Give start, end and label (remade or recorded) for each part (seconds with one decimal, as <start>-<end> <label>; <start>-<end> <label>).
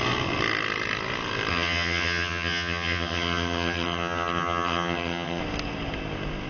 0.0-1.5 recorded; 1.5-5.4 remade; 5.4-6.5 recorded